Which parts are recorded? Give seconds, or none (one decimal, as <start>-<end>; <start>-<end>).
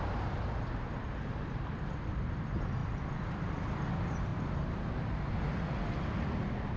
0.0-6.8